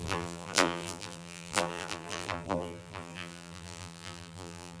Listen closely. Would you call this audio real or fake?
fake